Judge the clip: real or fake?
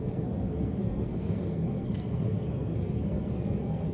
fake